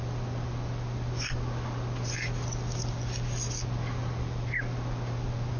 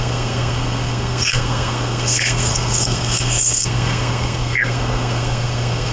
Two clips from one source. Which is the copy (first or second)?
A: second